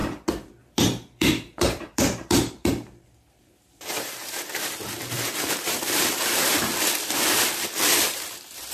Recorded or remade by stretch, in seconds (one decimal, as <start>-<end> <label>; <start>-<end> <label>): 0.0-0.6 recorded; 0.6-6.7 remade; 6.7-8.1 recorded; 8.1-8.7 remade

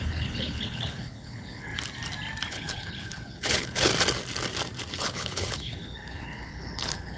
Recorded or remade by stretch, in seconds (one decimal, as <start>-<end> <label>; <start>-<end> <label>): 0.0-1.7 remade; 1.7-2.5 recorded; 2.5-3.9 remade; 3.9-4.9 recorded; 4.9-7.2 remade

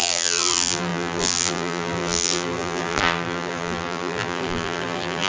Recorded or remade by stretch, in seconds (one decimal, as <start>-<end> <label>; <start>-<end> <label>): 0.0-5.3 remade

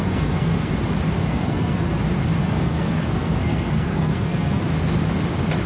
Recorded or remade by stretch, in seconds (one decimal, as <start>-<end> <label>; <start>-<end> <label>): 0.0-0.7 remade; 0.7-1.2 recorded; 1.2-2.0 remade; 2.0-2.4 recorded; 2.4-4.6 remade; 4.6-5.7 recorded

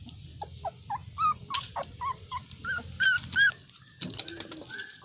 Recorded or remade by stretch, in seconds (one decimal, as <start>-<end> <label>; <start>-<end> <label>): 0.0-2.6 recorded; 2.6-3.2 remade; 3.2-5.0 recorded

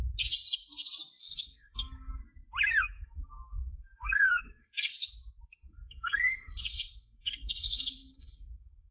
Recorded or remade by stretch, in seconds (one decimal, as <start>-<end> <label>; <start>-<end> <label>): 0.0-1.2 recorded; 1.2-2.2 remade; 2.2-2.8 recorded; 2.8-4.9 remade; 4.9-5.5 recorded; 5.5-8.9 remade